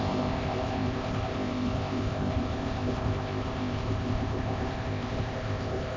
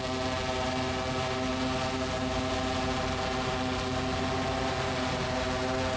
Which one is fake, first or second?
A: first